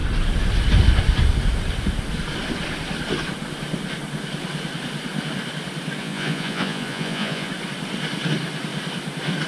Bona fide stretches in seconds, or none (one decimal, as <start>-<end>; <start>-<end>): 0.0-6.0; 7.5-9.5